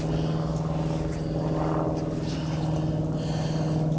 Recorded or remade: recorded